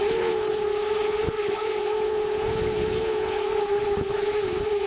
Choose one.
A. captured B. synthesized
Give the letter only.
B